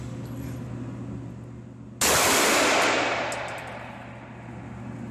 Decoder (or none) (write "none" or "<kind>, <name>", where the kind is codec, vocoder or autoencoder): none